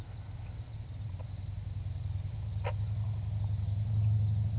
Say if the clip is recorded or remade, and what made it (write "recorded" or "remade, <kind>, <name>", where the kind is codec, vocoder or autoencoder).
recorded